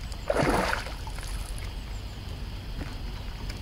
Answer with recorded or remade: recorded